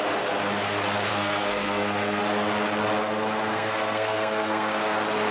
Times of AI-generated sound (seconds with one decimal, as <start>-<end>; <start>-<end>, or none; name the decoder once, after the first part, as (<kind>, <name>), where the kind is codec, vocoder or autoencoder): 1.1-2.2 (codec, SNAC); 3.5-4.8